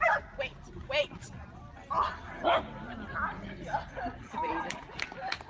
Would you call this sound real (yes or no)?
yes